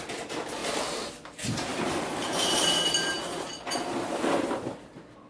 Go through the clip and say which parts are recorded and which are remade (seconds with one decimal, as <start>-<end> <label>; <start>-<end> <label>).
0.0-0.6 recorded; 0.6-1.1 remade; 1.1-1.7 recorded; 1.7-3.1 remade; 3.1-5.3 recorded

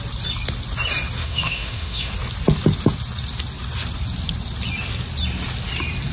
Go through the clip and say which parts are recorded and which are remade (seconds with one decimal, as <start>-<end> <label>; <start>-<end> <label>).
0.0-1.2 recorded; 1.2-2.1 remade; 2.1-6.1 recorded

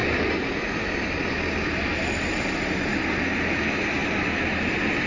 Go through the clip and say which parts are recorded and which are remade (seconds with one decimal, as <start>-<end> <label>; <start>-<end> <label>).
0.0-5.1 recorded

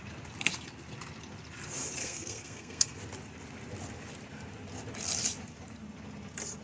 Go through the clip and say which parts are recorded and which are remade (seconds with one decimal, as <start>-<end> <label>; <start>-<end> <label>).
0.0-2.0 recorded; 2.0-3.0 remade; 3.0-6.6 recorded

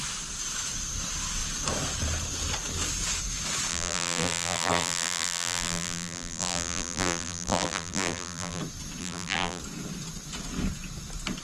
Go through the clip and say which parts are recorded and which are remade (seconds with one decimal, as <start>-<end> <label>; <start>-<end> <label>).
0.0-3.7 recorded; 3.7-8.6 remade; 8.6-9.0 recorded; 9.0-9.6 remade; 9.6-11.4 recorded